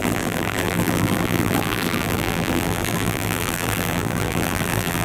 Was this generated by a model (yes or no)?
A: yes